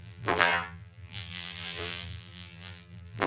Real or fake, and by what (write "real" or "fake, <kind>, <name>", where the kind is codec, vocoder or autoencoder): fake, vocoder, BigVGAN v2